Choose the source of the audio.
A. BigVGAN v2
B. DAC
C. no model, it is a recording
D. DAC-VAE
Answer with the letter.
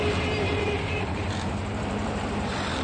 A